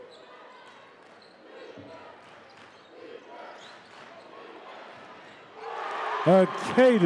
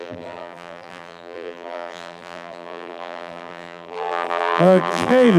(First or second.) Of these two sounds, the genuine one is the first